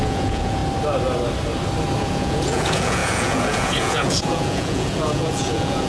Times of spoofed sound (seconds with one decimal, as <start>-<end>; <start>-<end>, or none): 0.0-0.6; 2.0-5.9